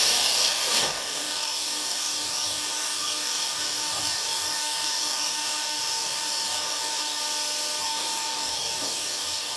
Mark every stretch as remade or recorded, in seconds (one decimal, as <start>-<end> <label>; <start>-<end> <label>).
0.0-7.2 remade; 7.2-7.8 recorded; 7.8-9.6 remade